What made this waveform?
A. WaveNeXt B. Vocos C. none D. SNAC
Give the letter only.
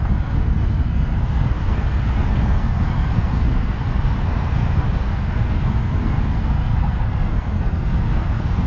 D